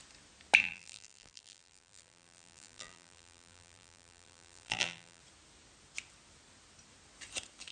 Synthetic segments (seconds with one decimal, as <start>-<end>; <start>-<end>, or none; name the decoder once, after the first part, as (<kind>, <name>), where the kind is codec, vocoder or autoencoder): 0.6-5.2 (vocoder, BigVGAN v2)